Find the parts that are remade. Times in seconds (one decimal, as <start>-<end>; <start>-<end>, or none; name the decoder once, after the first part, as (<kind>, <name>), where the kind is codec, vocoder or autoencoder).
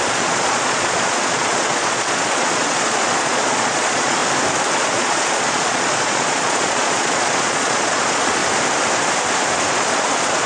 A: 0.0-4.2 (vocoder, Vocos); 4.7-8.4; 9.7-10.5